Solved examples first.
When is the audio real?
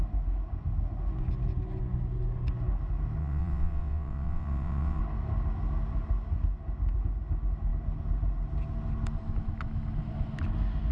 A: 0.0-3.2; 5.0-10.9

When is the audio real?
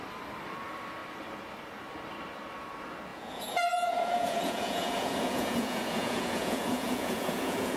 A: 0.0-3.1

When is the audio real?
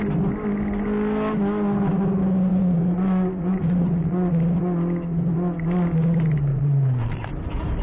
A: 0.0-2.5; 4.3-6.5; 7.3-7.8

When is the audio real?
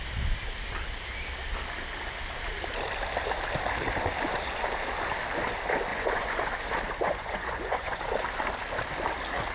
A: 0.0-5.9; 6.4-7.0; 8.0-9.5